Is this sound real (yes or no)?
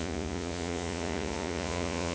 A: no